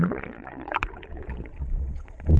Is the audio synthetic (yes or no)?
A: yes